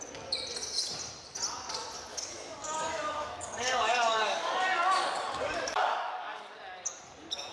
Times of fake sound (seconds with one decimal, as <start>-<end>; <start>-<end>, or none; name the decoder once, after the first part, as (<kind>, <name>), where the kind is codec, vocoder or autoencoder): 2.1-6.6 (codec, DAC)